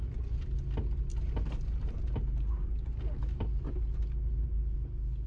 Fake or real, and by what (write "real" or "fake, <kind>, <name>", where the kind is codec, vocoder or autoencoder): real